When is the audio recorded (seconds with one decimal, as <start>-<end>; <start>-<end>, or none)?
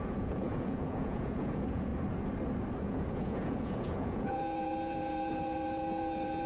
1.9-2.8